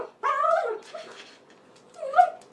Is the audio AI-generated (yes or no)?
yes